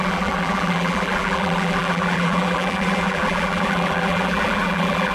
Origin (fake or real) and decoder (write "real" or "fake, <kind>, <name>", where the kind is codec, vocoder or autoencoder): fake, vocoder, BigVGAN v2